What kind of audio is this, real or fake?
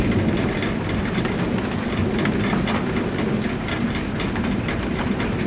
real